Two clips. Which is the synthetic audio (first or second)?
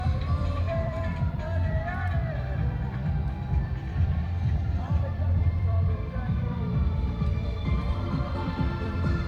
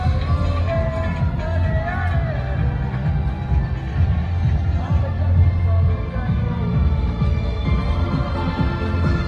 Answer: first